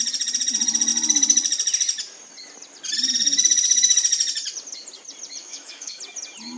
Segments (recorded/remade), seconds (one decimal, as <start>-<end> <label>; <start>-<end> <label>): 0.0-5.4 recorded; 5.4-6.0 remade; 6.0-6.6 recorded